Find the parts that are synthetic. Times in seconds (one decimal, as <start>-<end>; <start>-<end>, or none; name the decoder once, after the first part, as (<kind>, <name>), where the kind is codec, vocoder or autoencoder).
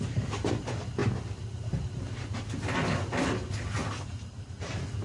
1.0-2.5 (vocoder, BigVGAN v2); 3.8-4.6